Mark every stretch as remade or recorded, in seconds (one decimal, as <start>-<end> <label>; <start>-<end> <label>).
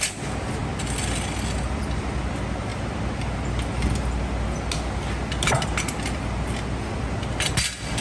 0.0-8.0 recorded